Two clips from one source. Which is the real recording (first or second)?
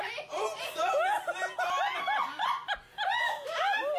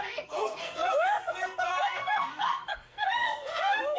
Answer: first